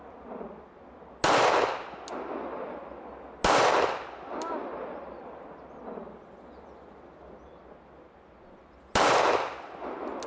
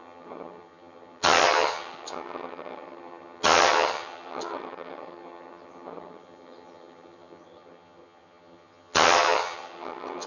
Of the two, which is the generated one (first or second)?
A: second